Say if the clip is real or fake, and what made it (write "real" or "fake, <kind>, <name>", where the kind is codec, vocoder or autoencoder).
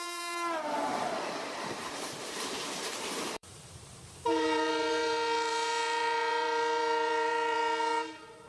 fake, vocoder, BigVGAN v2